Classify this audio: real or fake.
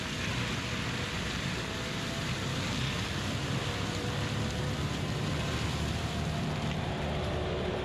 real